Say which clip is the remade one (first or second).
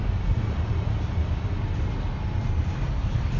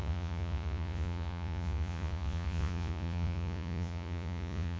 second